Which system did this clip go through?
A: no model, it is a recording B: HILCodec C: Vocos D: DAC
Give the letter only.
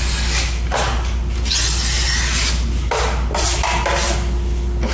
A